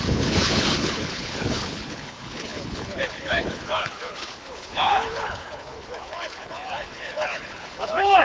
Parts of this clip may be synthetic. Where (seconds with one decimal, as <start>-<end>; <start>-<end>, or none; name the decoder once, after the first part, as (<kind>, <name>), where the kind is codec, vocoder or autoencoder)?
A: 0.0-8.2 (codec, HILCodec)